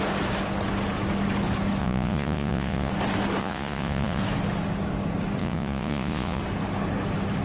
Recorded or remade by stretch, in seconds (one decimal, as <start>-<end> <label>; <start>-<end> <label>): 0.0-1.8 recorded; 1.8-2.9 remade; 2.9-3.4 recorded; 3.4-4.2 remade; 4.2-5.4 recorded; 5.4-6.4 remade; 6.4-7.4 recorded